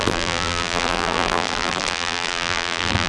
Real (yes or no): no